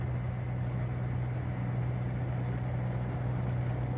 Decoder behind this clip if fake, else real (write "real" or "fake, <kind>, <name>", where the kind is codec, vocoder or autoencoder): real